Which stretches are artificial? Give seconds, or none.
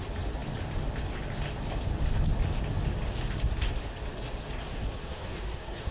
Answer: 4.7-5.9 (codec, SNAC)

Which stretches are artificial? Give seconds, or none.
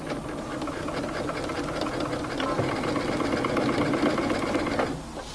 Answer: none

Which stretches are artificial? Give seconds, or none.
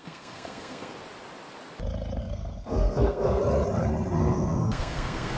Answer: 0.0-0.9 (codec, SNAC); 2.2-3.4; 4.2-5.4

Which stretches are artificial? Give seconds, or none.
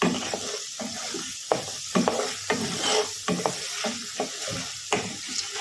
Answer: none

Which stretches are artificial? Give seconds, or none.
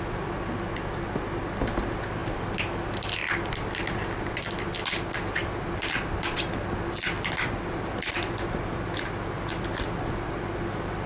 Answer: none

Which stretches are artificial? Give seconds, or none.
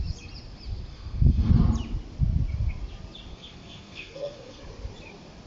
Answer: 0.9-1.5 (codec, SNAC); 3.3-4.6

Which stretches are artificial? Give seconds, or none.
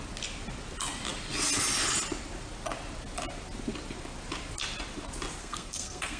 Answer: 5.4-6.2 (codec, SNAC)